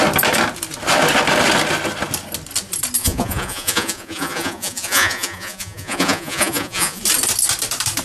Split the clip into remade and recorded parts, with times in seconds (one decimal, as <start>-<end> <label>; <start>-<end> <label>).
0.0-3.0 recorded; 3.0-7.0 remade; 7.0-8.0 recorded